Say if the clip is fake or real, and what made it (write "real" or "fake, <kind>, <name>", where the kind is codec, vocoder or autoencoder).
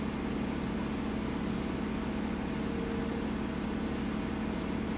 real